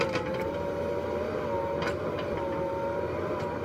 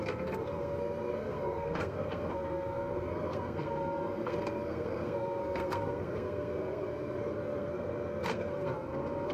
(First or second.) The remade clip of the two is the second